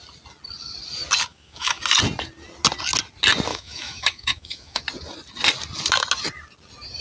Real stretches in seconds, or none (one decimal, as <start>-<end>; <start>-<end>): 0.0-1.3; 1.8-3.5; 4.8-7.0